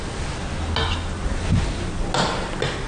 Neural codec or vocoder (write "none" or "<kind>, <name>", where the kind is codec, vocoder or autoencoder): none